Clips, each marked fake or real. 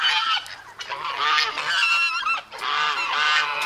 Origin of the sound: real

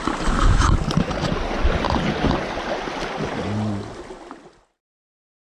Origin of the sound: real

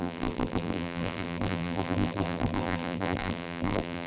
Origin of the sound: fake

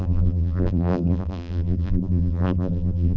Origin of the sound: fake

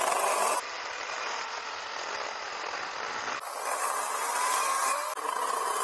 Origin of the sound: real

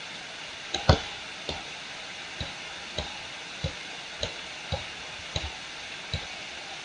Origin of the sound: fake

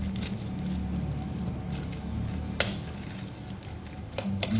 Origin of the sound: real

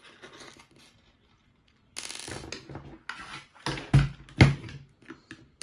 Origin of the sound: real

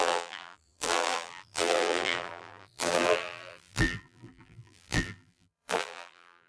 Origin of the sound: fake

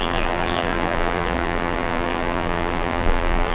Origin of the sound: fake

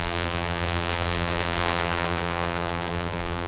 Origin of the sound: fake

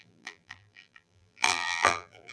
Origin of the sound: fake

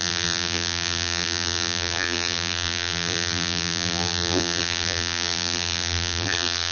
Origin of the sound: fake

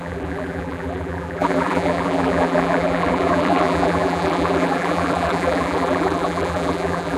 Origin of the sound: fake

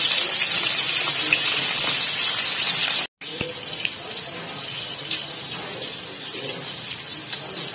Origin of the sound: real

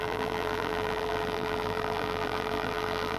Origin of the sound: fake